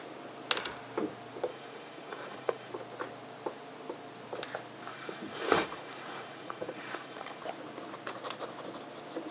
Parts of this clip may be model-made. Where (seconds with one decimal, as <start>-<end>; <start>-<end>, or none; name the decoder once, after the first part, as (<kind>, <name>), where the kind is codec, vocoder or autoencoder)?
1.5-2.7 (vocoder, Vocos); 4.9-7.4